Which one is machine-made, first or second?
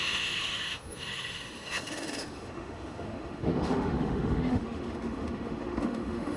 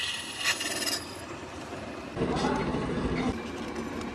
first